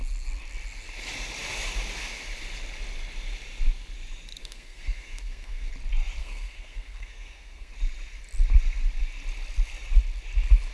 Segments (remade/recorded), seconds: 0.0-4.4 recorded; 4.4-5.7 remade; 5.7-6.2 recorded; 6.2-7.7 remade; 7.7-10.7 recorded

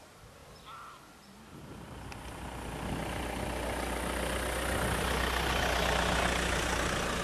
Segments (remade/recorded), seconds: 0.0-7.2 recorded

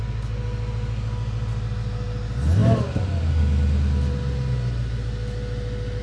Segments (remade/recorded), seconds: 0.0-6.0 recorded

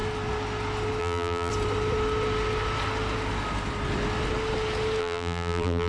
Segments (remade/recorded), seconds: 0.0-1.0 recorded; 1.0-1.5 remade; 1.5-5.0 recorded; 5.0-5.9 remade

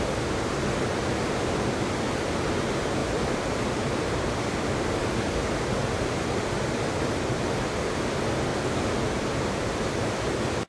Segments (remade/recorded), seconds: 0.0-3.0 recorded; 3.0-5.0 remade; 5.0-5.8 recorded; 5.8-6.5 remade; 6.5-8.5 recorded; 8.5-10.2 remade; 10.2-10.7 recorded

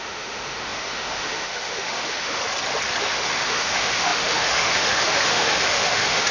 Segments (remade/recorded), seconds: 0.0-2.4 remade; 2.4-3.0 recorded; 3.0-6.3 remade

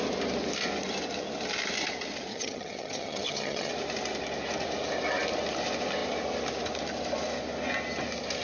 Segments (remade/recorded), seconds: 0.0-2.3 recorded; 2.3-3.7 remade; 3.7-8.4 recorded